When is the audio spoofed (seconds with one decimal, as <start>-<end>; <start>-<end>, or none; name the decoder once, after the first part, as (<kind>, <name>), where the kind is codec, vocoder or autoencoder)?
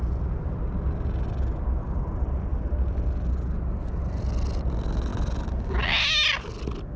2.5-3.3 (vocoder, BigVGAN v2)